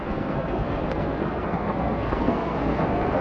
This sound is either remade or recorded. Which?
remade